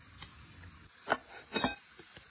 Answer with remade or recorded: recorded